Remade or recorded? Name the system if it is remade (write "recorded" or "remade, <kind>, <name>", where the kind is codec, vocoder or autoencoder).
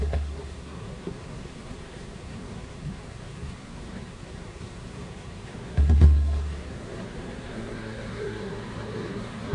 remade, codec, SNAC